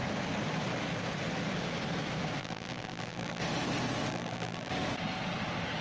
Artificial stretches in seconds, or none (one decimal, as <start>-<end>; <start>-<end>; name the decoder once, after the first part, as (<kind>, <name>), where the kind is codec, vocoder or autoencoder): 2.4-3.4 (vocoder, BigVGAN v2); 4.1-4.7